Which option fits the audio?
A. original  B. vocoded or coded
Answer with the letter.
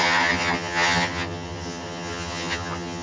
B